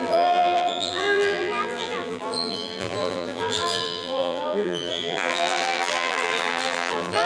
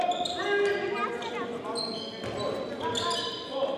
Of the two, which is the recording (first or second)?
second